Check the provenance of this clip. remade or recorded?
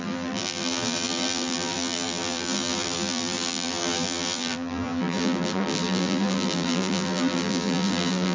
remade